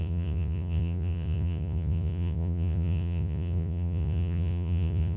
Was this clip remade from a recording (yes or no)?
yes